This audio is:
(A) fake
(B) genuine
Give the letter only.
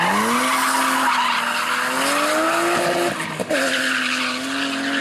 B